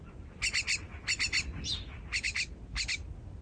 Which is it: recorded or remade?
recorded